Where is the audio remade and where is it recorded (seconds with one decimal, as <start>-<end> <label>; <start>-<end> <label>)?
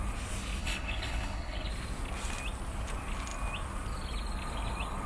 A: 0.0-0.6 recorded; 0.6-1.7 remade; 1.7-5.1 recorded